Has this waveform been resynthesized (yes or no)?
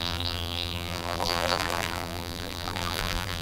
yes